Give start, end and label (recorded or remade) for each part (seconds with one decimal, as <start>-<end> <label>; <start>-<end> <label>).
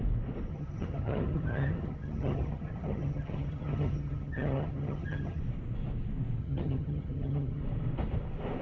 0.0-0.5 recorded; 0.5-5.4 remade; 5.4-6.4 recorded; 6.4-7.6 remade; 7.6-8.6 recorded